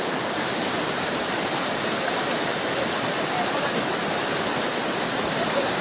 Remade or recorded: recorded